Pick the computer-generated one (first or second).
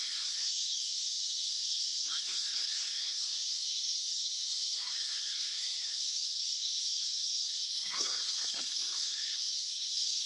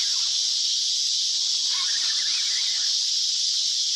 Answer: first